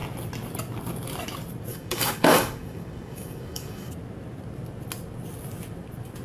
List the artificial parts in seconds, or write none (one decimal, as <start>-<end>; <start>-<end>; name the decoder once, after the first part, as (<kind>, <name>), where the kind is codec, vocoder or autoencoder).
1.7-3.9 (codec, DAC)